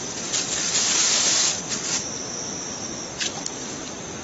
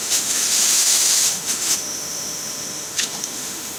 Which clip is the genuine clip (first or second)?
first